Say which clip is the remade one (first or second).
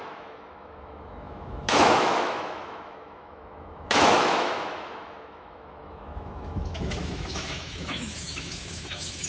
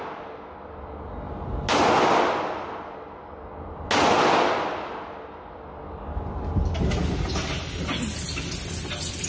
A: first